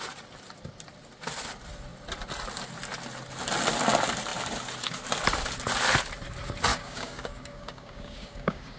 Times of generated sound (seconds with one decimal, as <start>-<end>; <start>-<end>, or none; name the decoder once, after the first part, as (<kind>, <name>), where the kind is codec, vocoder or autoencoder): 6.7-8.8 (codec, DAC)